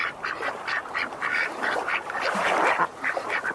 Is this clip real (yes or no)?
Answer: no